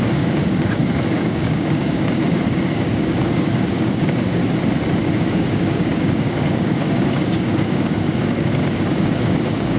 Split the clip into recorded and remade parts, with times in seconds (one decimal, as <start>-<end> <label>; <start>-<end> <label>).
0.0-4.4 remade; 4.4-5.2 recorded; 5.2-9.8 remade